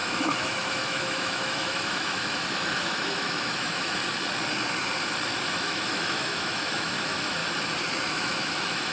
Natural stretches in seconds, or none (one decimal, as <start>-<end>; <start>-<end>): 4.0-5.5; 7.4-8.1